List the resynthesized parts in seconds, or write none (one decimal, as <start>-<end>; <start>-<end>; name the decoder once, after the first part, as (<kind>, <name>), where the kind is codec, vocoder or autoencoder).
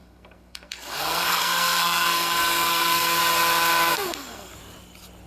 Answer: 0.0-3.2 (codec, SNAC); 3.9-4.5